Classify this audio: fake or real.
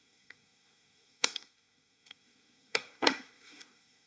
fake